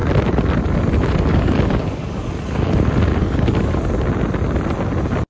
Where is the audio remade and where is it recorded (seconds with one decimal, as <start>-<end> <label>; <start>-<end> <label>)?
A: 0.0-1.3 recorded; 1.3-2.3 remade; 2.3-3.2 recorded; 3.2-3.8 remade; 3.8-5.3 recorded